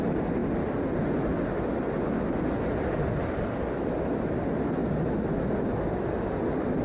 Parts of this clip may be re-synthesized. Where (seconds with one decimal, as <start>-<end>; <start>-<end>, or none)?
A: none